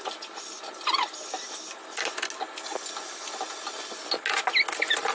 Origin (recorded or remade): recorded